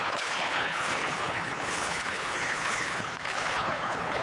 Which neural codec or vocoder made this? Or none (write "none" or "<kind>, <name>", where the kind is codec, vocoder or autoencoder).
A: codec, HILCodec